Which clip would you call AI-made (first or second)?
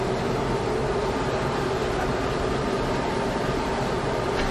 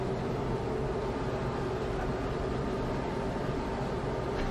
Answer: first